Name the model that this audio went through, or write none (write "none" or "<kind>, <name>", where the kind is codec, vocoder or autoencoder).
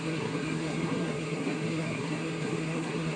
codec, SNAC